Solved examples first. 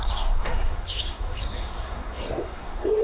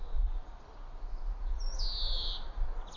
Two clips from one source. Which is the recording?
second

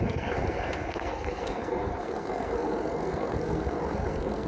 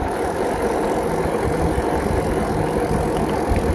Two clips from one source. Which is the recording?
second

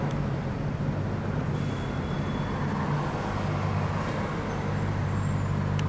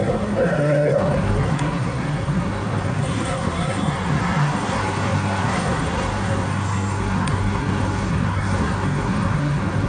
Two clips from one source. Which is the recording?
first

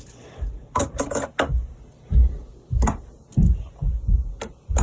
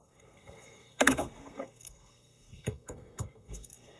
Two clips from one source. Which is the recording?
first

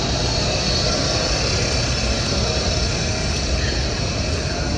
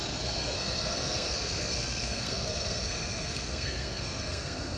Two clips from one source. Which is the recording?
first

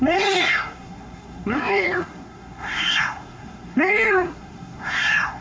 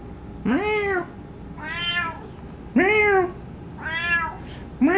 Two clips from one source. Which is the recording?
second